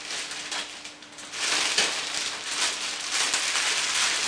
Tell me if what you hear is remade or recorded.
recorded